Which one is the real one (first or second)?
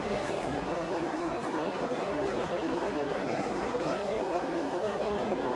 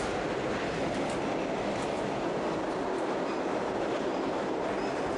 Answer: second